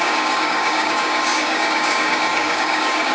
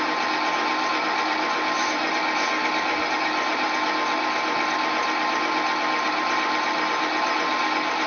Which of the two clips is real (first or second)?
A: second